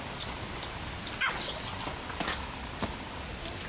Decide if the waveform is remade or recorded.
recorded